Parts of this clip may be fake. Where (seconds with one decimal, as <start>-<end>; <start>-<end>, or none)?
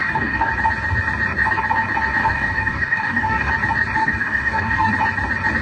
0.0-0.5; 2.2-3.5; 4.0-4.9